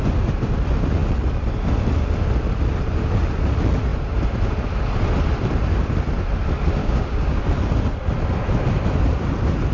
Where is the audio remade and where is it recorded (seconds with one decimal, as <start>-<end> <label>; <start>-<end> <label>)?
0.0-6.8 recorded; 6.8-7.4 remade; 7.4-9.7 recorded